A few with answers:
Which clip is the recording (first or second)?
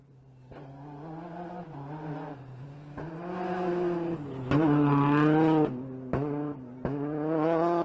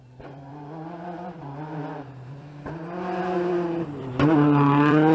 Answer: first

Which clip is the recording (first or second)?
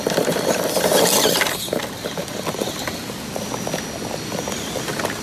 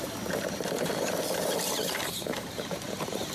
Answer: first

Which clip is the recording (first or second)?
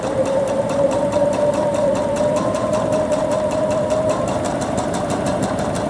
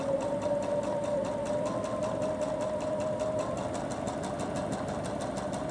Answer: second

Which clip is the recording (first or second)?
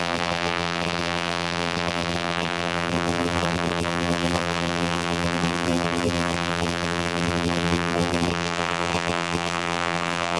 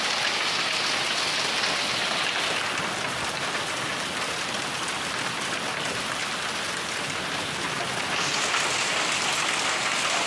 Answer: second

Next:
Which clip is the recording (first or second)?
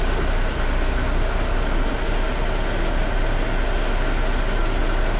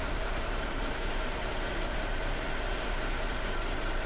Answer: first